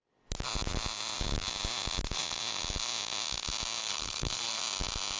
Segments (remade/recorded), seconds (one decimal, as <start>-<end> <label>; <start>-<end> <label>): 0.0-3.8 recorded; 3.8-4.6 remade; 4.6-5.2 recorded